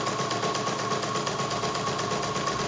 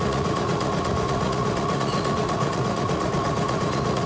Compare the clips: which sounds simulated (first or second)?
second